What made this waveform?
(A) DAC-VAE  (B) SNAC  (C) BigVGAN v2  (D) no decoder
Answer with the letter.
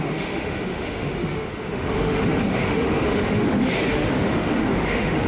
A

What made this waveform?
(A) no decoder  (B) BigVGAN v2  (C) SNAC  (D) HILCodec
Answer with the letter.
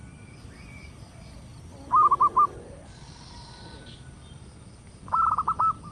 A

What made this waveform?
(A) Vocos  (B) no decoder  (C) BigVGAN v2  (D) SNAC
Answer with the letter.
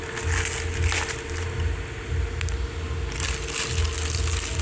B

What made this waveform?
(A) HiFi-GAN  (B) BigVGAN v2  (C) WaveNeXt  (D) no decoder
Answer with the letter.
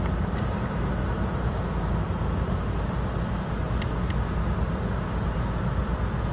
D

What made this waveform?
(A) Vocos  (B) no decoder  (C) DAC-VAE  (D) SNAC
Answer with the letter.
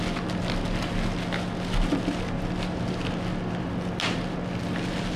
B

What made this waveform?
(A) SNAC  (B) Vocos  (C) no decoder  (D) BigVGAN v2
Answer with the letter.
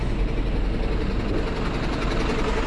C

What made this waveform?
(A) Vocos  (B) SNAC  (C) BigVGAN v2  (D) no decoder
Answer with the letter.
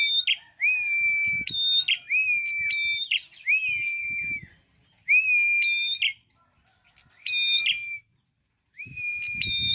D